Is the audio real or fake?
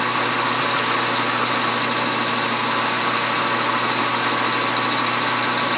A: real